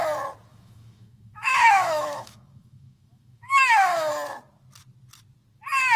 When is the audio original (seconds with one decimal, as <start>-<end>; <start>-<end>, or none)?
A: 0.0-0.5; 4.1-6.0